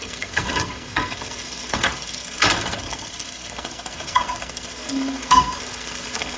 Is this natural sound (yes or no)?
no